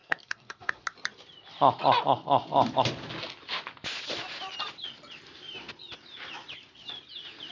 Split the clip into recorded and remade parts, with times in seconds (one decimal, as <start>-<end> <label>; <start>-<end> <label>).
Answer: 0.0-0.8 remade; 0.8-7.5 recorded